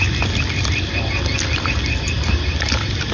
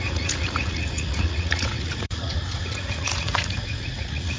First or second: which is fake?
second